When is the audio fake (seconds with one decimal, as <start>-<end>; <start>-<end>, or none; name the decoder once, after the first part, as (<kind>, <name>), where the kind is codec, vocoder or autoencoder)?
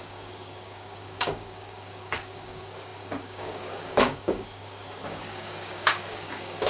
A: 0.0-6.7 (codec, DAC)